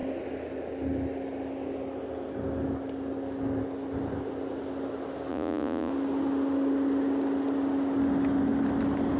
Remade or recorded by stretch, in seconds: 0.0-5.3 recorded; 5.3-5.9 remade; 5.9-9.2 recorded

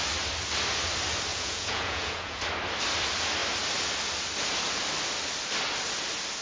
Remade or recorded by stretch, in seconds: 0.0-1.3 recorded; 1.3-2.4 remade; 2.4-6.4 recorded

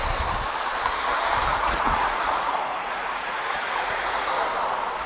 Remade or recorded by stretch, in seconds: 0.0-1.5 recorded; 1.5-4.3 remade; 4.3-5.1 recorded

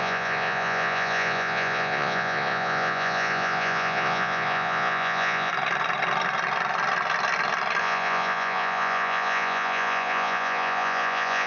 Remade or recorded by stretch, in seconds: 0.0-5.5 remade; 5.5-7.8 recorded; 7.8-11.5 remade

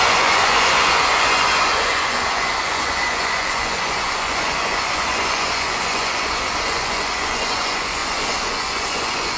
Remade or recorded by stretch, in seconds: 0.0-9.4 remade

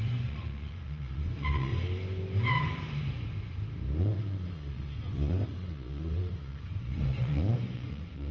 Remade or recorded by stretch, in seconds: 0.0-1.7 remade; 1.7-4.0 recorded; 4.0-8.3 remade

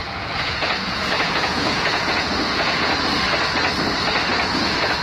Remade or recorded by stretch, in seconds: 0.0-3.0 remade; 3.0-4.3 recorded; 4.3-5.0 remade